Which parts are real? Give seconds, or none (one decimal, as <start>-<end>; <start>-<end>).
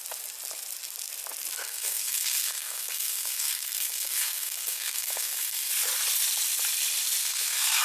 0.0-1.6; 5.7-7.2